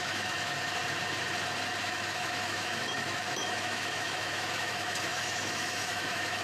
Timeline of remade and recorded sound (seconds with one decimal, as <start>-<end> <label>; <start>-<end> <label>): 0.0-0.8 remade; 0.8-1.8 recorded; 1.8-6.4 remade